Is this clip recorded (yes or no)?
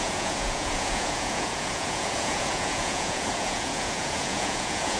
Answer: no